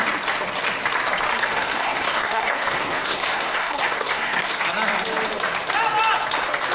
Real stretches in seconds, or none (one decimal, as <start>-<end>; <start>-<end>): 0.0-1.3; 4.6-6.7